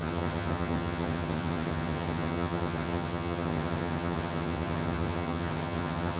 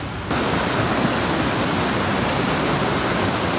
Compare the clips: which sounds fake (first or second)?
first